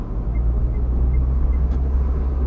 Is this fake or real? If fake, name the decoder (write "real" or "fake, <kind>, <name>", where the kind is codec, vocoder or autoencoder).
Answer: real